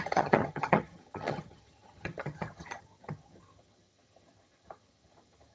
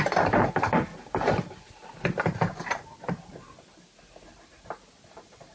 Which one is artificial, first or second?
first